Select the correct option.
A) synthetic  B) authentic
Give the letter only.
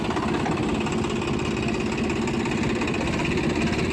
B